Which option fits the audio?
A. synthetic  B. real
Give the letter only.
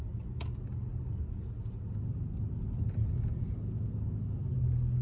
B